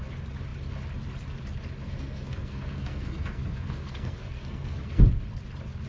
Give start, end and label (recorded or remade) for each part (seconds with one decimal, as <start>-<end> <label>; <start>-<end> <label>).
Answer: 0.0-1.8 recorded; 1.8-5.0 remade; 5.0-5.9 recorded